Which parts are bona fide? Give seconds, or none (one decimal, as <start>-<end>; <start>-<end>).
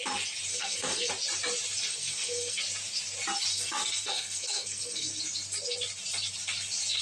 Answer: 0.0-0.5; 1.1-1.9; 2.6-3.5; 5.2-7.0